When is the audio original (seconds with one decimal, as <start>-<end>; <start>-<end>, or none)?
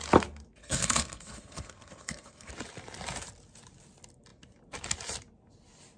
0.0-0.6; 2.5-6.0